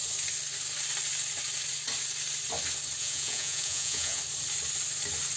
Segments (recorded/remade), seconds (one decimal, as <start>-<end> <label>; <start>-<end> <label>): 0.0-3.0 recorded; 3.0-4.2 remade; 4.2-5.4 recorded